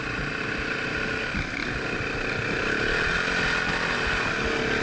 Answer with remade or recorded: recorded